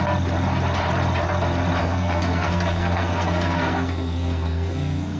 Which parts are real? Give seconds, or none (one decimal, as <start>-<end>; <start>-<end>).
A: 0.0-1.8